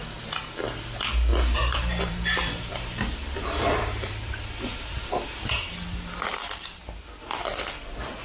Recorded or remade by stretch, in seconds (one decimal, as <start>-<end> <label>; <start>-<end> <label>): 0.0-1.3 recorded; 1.3-4.3 remade; 4.3-4.7 recorded; 4.7-5.7 remade; 5.7-6.3 recorded; 6.3-6.8 remade; 6.8-8.2 recorded